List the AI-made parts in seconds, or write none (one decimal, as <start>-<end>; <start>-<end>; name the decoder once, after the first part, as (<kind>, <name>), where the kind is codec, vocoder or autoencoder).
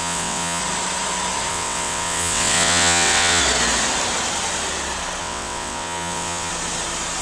0.0-0.6 (vocoder, WaveNeXt); 1.5-3.4; 5.2-6.5